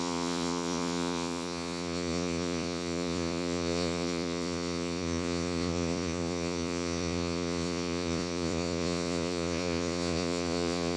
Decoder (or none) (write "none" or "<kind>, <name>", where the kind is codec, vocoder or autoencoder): vocoder, Vocos